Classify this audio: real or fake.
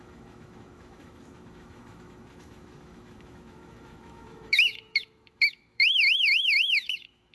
fake